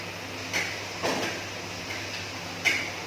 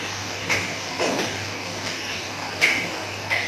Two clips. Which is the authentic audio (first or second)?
first